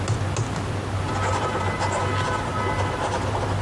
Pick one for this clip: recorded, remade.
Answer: recorded